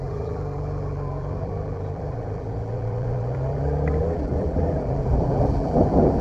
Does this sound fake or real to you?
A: fake